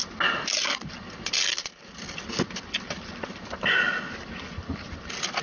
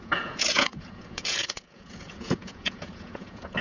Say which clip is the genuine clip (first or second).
first